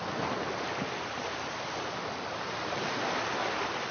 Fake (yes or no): no